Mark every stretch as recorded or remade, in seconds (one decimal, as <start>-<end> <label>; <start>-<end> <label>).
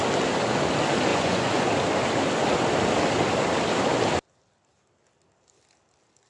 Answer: 0.0-1.1 recorded; 1.1-1.7 remade; 1.7-6.3 recorded